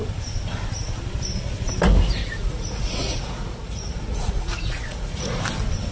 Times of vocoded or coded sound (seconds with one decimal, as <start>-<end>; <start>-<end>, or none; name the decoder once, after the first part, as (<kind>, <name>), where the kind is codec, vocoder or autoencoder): 2.2-5.4 (vocoder, Vocos)